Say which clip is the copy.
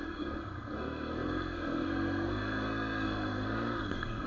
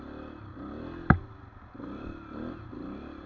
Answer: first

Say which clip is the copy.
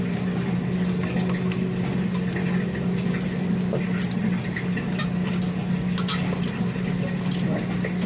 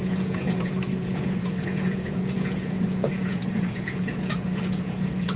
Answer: second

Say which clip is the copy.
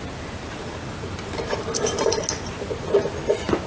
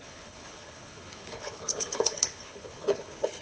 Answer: second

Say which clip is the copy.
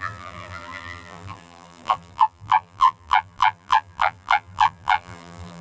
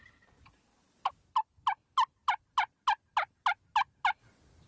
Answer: first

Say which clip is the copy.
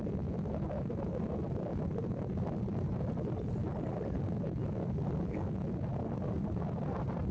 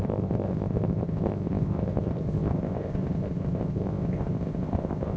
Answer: second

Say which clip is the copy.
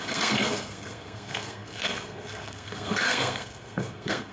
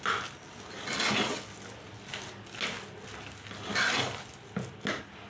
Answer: first